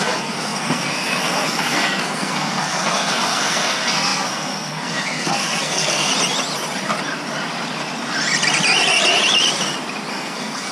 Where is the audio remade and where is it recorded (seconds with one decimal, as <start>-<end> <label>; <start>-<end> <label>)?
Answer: 0.0-6.1 remade; 6.1-10.1 recorded; 10.1-10.7 remade